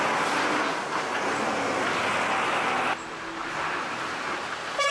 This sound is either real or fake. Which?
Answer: real